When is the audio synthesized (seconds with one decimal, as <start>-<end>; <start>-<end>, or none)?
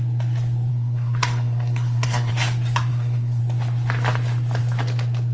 0.7-2.3; 2.9-3.4